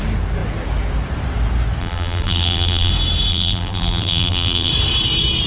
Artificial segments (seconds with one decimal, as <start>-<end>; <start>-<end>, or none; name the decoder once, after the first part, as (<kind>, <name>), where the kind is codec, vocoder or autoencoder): 1.8-2.9 (vocoder, BigVGAN v2); 3.3-4.7